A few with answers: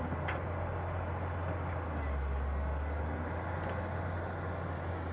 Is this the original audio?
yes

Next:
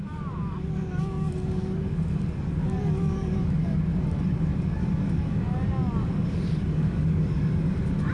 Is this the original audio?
no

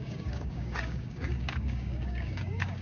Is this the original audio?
no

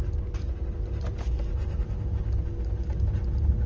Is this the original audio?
yes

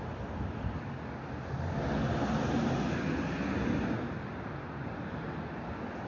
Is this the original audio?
yes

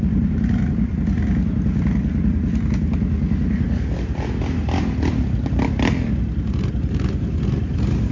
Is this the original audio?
yes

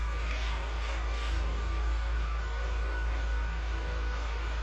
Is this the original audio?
no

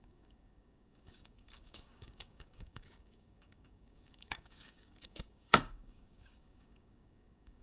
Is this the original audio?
no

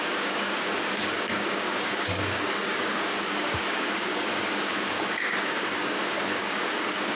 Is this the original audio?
no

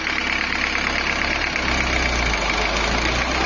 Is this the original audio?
yes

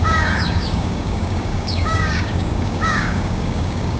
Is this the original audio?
no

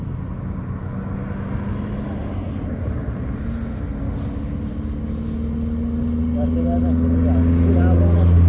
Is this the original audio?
yes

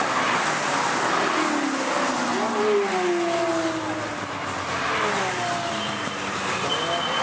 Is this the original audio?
yes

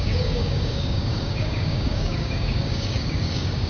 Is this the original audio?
no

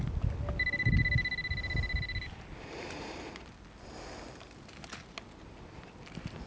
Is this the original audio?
yes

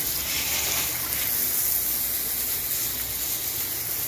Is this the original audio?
yes